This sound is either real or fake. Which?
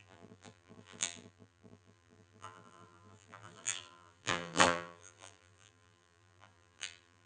fake